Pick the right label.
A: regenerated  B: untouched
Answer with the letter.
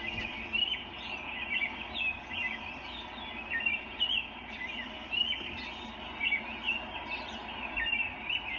B